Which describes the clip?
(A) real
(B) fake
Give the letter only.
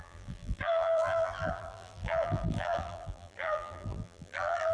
B